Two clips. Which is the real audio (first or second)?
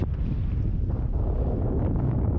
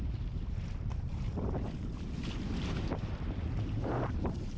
first